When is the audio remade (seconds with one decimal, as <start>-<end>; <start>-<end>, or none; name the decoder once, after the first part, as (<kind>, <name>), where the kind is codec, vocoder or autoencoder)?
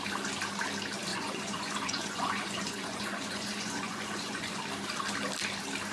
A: 1.1-4.6 (vocoder, Vocos)